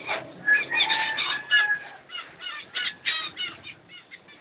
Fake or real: real